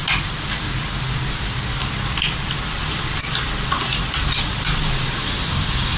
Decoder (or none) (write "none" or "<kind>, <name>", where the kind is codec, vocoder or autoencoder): none